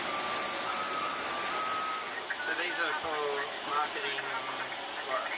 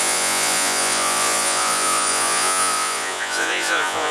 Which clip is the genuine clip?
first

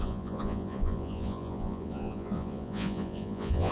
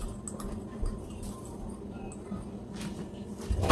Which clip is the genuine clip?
second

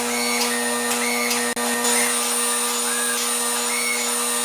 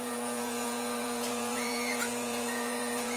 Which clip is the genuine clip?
first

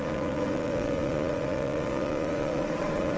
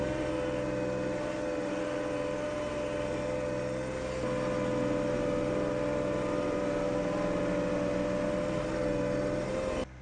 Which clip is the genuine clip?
second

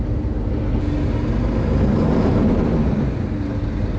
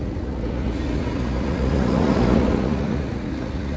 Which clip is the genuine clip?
first